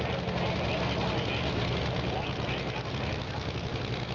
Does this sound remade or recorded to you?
recorded